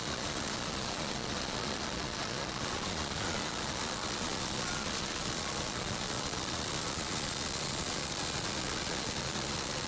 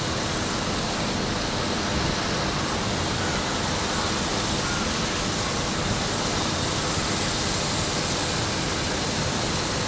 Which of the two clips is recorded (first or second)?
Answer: second